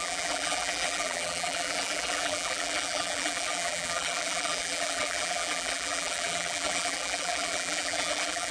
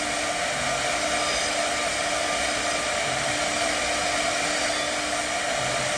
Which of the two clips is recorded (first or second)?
second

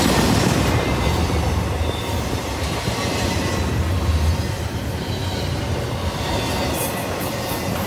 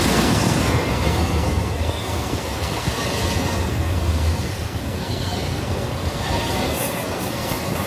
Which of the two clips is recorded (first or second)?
first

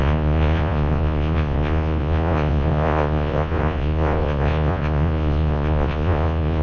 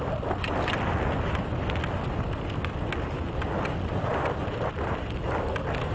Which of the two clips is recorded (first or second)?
second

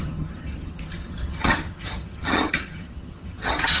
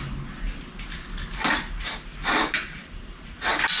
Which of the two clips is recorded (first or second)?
second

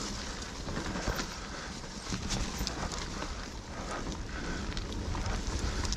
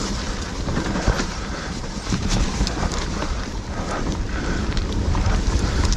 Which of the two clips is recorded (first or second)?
first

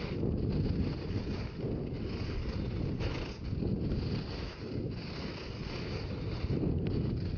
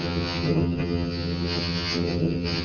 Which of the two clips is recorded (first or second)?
first